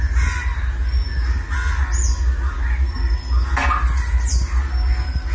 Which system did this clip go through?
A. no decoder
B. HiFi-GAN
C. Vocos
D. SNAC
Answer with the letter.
A